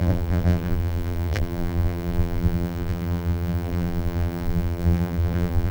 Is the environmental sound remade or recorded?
remade